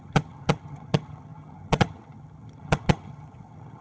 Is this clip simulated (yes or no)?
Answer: yes